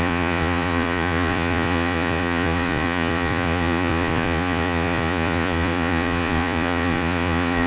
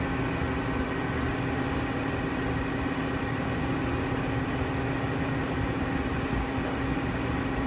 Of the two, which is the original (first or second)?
second